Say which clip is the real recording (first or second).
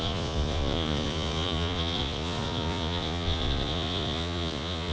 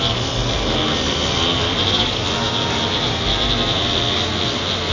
second